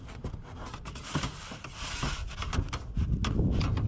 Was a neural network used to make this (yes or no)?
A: no